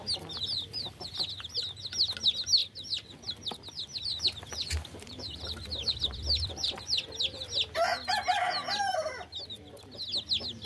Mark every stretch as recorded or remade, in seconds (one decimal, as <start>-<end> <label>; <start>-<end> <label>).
0.0-2.6 recorded; 2.6-7.2 remade; 7.2-10.7 recorded